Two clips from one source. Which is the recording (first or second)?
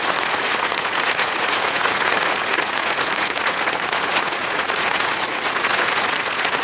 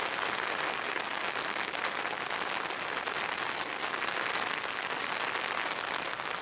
second